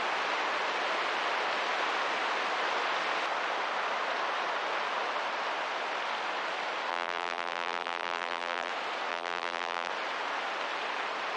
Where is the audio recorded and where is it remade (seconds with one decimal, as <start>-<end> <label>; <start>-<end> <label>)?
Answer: 0.0-6.9 recorded; 6.9-8.7 remade; 8.7-9.1 recorded; 9.1-9.9 remade; 9.9-11.4 recorded